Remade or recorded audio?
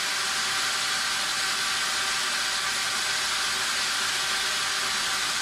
recorded